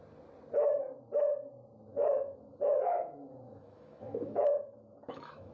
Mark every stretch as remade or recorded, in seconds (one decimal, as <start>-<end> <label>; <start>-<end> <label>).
0.0-1.9 recorded; 1.9-5.5 remade